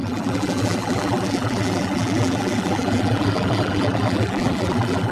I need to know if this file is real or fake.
fake